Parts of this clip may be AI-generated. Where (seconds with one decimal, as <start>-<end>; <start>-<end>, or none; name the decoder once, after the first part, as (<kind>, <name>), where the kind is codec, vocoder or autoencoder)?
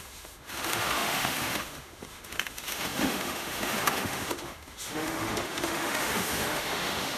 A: 0.0-7.2 (autoencoder, DAC-VAE)